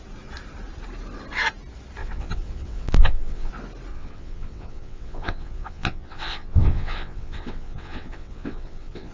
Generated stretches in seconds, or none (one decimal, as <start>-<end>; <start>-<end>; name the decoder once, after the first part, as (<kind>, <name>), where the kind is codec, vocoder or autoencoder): 2.0-3.5 (vocoder, WaveNeXt); 3.9-9.1